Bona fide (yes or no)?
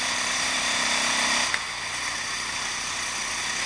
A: yes